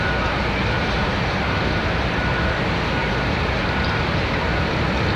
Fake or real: fake